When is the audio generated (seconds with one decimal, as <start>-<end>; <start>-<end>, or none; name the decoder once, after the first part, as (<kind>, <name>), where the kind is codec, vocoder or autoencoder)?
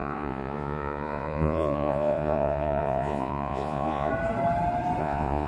0.0-4.1 (vocoder, Vocos); 5.0-5.5